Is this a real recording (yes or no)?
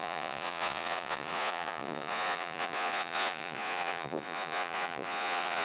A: no